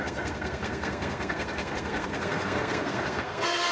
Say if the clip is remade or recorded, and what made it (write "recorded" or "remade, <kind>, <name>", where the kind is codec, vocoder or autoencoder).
remade, codec, SNAC